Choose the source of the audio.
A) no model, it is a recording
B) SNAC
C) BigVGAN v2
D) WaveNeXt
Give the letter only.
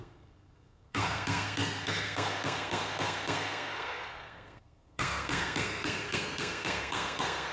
B